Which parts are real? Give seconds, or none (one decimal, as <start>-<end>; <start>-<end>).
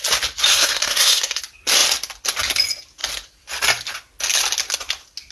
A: 0.0-0.5; 1.4-5.3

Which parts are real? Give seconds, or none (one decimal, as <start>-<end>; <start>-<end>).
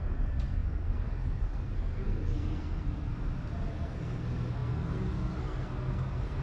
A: 3.1-3.7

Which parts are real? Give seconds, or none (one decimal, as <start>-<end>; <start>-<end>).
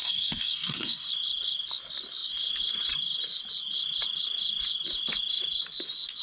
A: 1.1-6.2